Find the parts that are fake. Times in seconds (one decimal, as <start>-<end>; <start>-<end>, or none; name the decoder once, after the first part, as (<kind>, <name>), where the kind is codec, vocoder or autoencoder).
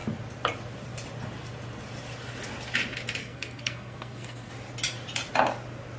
3.2-4.5 (codec, SNAC)